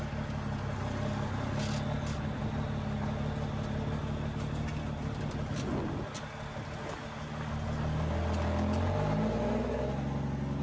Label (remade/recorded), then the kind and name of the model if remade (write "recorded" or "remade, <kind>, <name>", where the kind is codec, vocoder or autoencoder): recorded